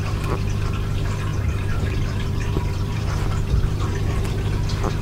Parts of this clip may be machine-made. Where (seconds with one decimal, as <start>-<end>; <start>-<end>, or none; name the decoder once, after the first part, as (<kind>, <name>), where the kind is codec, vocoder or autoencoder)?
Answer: 1.3-4.3 (vocoder, BigVGAN v2)